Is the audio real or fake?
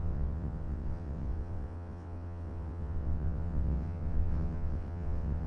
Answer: fake